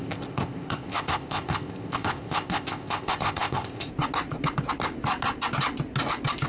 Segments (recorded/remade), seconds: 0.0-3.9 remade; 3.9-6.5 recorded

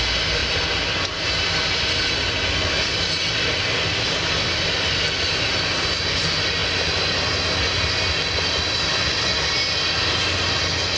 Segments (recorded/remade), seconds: 0.0-11.0 recorded

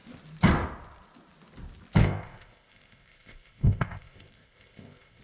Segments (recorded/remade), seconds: 0.0-2.0 recorded; 2.0-5.2 remade

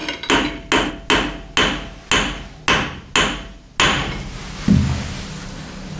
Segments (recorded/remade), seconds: 0.0-6.0 recorded

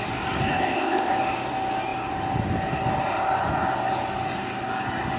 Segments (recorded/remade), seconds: 0.0-0.5 recorded; 0.5-1.1 remade; 1.1-5.2 recorded

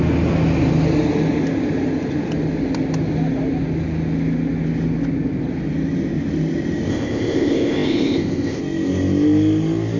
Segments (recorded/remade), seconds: 0.0-6.9 recorded; 6.9-8.6 remade; 8.6-10.0 recorded